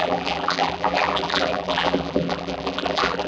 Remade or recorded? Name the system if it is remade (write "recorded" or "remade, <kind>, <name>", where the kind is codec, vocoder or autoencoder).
remade, vocoder, BigVGAN v2